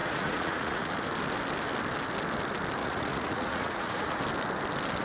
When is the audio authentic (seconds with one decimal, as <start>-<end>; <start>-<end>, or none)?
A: 0.9-2.8; 4.2-5.0